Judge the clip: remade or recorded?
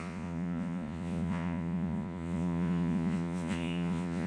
remade